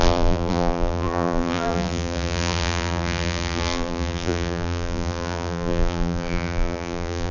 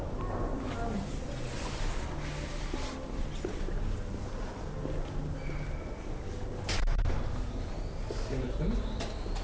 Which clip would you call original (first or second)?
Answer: second